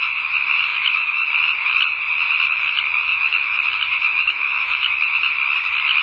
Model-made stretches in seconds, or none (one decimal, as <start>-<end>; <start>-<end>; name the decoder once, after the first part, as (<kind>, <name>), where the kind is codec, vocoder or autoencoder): 0.7-1.3 (autoencoder, DAC-VAE); 3.1-3.6; 4.1-4.9